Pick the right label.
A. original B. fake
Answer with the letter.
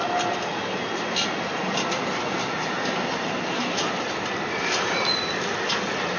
A